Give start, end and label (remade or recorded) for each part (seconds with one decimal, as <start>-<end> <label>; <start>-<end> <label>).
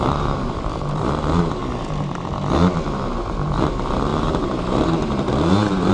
0.0-1.6 remade; 1.6-2.8 recorded; 2.8-5.9 remade